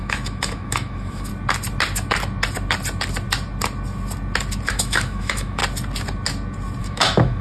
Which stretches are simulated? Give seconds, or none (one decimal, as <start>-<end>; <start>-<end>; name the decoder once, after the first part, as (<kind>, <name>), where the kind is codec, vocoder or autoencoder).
0.0-1.3 (autoencoder, DAC-VAE); 4.7-5.6; 6.8-7.4